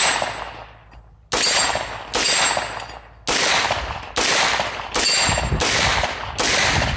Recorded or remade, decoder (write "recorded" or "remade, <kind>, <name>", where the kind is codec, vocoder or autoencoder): recorded